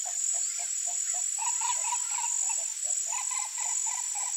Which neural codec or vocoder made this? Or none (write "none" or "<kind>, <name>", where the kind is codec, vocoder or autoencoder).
none